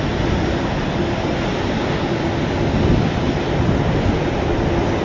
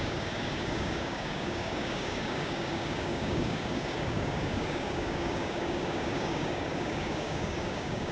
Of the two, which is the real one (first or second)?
first